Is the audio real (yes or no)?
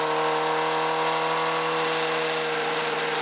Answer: yes